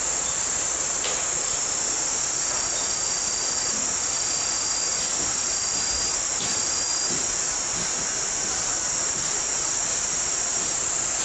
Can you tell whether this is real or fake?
real